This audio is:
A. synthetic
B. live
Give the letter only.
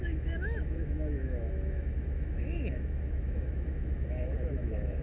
A